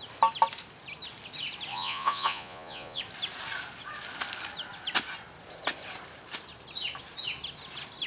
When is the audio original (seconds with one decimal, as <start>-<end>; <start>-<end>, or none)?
0.0-1.7; 3.0-8.1